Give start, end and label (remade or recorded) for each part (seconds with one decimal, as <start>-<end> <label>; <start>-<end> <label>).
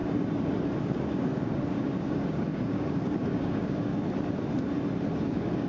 0.0-0.8 recorded; 0.8-3.9 remade; 3.9-5.3 recorded; 5.3-5.7 remade